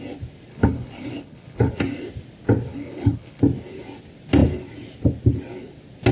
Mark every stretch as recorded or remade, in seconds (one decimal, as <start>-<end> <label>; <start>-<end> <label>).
0.0-0.5 recorded; 0.5-1.7 remade; 1.7-2.7 recorded; 2.7-3.4 remade; 3.4-6.1 recorded